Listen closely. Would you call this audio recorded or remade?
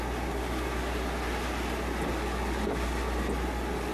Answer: recorded